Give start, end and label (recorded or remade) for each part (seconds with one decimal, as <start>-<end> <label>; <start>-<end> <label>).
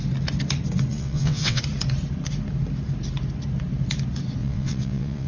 0.0-0.9 recorded; 0.9-1.6 remade; 1.6-4.4 recorded; 4.4-5.3 remade